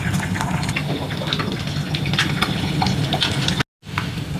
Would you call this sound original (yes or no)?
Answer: yes